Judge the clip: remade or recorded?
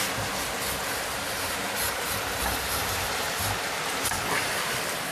remade